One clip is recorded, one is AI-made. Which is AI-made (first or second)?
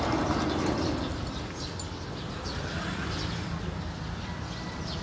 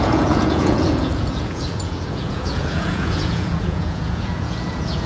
second